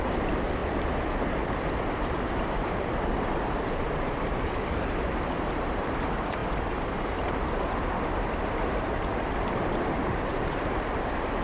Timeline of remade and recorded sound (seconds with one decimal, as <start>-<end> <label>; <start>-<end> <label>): 0.0-6.4 remade; 6.4-9.1 recorded; 9.1-11.4 remade